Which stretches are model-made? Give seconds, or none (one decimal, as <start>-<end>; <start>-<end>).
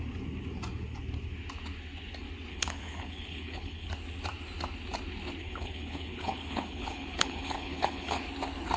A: 2.5-3.9; 5.4-8.2